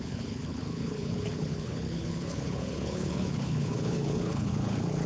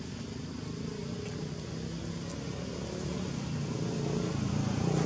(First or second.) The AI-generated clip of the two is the first